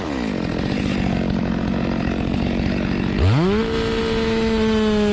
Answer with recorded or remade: recorded